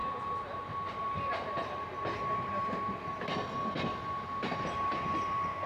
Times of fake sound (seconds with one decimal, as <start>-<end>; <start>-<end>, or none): none